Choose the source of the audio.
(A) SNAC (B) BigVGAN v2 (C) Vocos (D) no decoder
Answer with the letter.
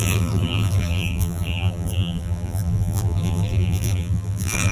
B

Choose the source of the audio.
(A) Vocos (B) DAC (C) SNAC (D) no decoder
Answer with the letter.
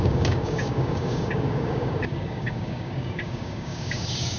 B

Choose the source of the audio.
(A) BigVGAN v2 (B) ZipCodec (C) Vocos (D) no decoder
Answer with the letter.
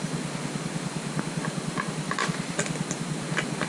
D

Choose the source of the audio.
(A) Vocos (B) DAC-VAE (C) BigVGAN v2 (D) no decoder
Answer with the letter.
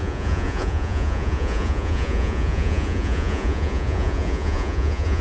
A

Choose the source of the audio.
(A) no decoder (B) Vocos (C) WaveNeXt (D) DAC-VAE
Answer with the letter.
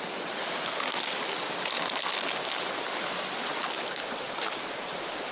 A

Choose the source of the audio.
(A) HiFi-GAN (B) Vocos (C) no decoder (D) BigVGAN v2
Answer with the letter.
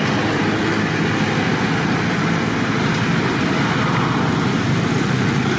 C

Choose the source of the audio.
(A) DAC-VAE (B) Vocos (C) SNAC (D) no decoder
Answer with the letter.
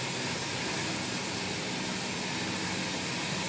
D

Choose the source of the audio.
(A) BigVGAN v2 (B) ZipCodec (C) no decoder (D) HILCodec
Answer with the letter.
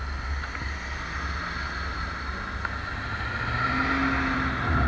C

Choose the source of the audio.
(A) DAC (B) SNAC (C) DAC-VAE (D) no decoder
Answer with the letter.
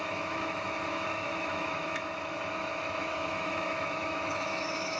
C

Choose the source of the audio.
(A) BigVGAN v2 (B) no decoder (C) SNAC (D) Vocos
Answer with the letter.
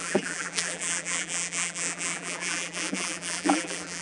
A